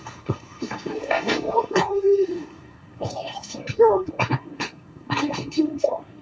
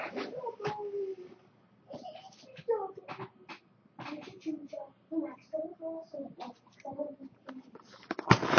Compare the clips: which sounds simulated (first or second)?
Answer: first